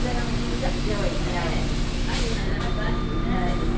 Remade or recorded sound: recorded